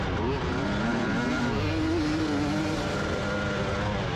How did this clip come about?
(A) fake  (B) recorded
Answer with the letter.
B